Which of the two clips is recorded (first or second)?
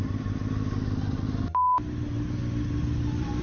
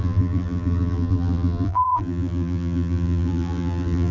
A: first